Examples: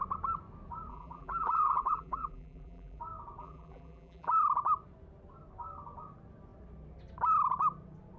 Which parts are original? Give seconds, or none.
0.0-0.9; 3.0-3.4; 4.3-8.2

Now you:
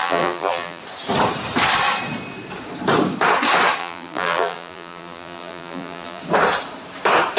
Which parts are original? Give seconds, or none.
0.8-3.8; 6.2-7.4

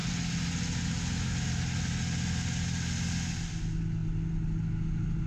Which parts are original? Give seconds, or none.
0.0-5.3

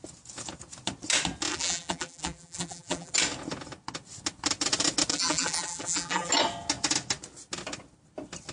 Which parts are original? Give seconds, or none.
0.0-1.5; 3.1-5.1; 6.3-8.5